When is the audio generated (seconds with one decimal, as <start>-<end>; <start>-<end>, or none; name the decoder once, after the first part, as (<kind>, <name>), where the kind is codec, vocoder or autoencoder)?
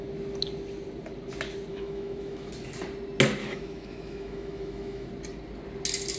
1.7-2.5 (autoencoder, DAC-VAE); 3.4-5.1